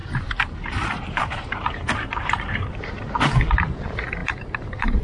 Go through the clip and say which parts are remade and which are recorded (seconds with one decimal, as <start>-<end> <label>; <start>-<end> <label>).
0.0-3.0 remade; 3.0-4.2 recorded; 4.2-5.0 remade